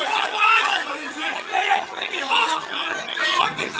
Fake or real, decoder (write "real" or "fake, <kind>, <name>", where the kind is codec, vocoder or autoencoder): fake, vocoder, HiFi-GAN